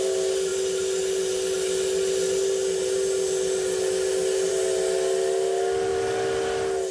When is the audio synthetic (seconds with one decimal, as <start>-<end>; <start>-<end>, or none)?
none